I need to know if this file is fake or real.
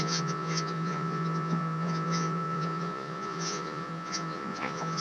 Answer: fake